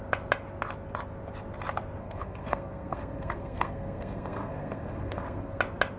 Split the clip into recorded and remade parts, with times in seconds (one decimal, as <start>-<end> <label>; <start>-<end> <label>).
0.0-2.0 recorded; 2.0-5.6 remade; 5.6-6.0 recorded